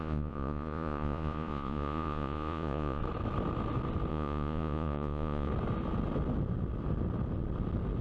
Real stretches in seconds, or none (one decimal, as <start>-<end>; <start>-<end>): 3.0-4.1; 5.5-8.0